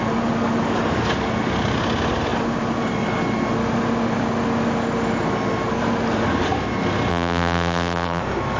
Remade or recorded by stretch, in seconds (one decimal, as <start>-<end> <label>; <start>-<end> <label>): 0.0-7.1 recorded; 7.1-8.2 remade; 8.2-8.6 recorded